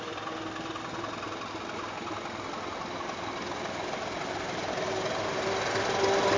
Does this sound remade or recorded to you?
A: recorded